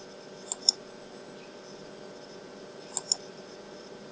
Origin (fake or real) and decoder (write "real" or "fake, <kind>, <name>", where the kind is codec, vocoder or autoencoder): real